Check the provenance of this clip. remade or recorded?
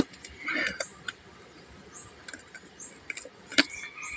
recorded